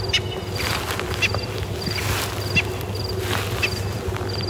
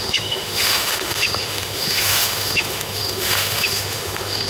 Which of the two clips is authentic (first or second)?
first